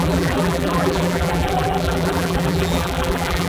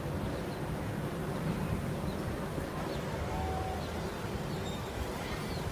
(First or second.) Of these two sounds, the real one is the second